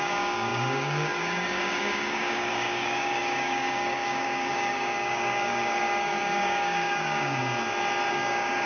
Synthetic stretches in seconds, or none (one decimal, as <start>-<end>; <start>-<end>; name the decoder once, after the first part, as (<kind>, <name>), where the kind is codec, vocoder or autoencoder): 0.0-7.4 (codec, DAC); 8.1-8.7